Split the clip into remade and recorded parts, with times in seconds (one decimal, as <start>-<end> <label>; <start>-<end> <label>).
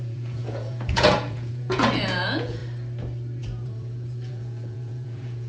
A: 0.0-2.6 remade; 2.6-3.4 recorded; 3.4-5.5 remade